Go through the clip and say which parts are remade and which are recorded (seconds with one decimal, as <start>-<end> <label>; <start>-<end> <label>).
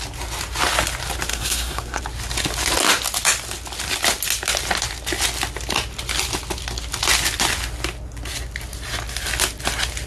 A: 0.0-1.3 recorded; 1.3-2.0 remade; 2.0-10.1 recorded